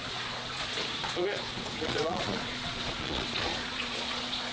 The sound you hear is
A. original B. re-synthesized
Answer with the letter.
B